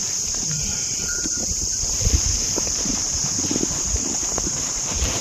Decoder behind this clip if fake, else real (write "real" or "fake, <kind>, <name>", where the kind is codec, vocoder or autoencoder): fake, vocoder, BigVGAN v2